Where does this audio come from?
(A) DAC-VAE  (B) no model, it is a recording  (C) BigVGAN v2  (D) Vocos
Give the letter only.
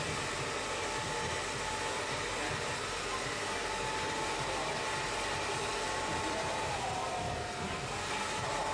B